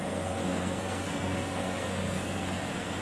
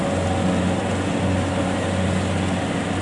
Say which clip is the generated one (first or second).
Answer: first